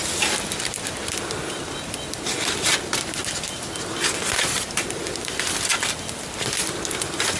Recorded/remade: recorded